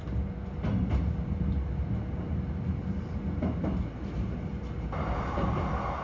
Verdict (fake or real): real